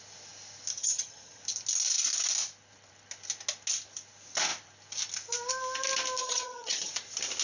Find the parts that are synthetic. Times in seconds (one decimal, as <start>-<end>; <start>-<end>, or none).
0.8-1.4; 6.2-6.9